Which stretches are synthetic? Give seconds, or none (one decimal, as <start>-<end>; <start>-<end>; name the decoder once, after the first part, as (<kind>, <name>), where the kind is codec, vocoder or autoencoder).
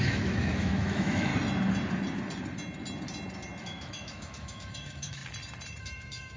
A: 0.0-1.3 (autoencoder, DAC-VAE); 3.6-5.2; 5.8-6.4